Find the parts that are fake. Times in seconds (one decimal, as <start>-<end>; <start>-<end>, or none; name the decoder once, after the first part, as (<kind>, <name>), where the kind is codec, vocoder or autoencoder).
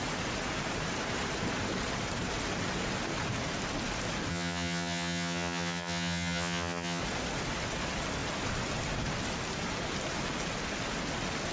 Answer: 4.3-7.0 (vocoder, HiFi-GAN)